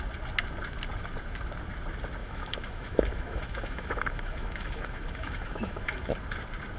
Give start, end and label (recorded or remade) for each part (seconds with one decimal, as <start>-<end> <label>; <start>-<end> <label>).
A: 0.0-2.2 recorded; 2.2-6.1 remade; 6.1-6.8 recorded